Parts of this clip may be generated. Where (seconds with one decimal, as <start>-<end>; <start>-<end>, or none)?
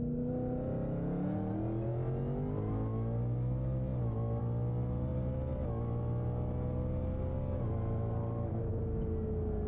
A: none